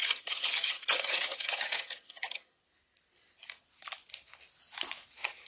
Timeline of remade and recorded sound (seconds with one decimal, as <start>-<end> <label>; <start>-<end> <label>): 0.0-2.6 remade; 2.6-5.5 recorded